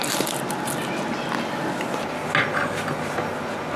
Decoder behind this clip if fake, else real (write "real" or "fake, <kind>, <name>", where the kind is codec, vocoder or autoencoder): real